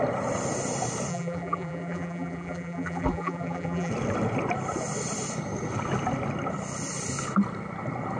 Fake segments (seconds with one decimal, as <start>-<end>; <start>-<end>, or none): 1.1-3.9